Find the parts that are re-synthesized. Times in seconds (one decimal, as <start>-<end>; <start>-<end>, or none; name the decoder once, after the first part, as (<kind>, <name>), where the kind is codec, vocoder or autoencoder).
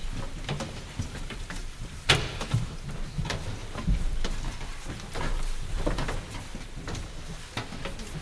0.0-1.9 (vocoder, BigVGAN v2); 3.6-7.4